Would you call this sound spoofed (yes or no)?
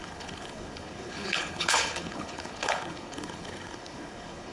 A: yes